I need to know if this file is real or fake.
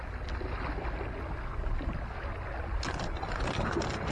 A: real